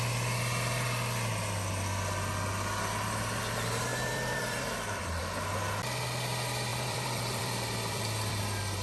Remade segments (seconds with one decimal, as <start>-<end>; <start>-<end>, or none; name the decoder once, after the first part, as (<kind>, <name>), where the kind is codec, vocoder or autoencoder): 3.9-5.2 (vocoder, BigVGAN v2); 6.7-8.4